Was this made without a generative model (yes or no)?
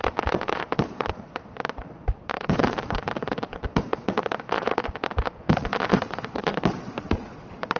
no